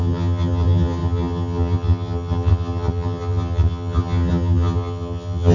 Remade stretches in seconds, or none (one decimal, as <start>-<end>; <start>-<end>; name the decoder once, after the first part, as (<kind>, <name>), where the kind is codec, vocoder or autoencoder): 0.0-5.5 (vocoder, HiFi-GAN)